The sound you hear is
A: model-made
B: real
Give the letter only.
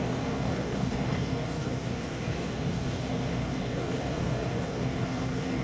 A